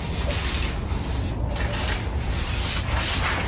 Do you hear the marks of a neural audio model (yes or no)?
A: no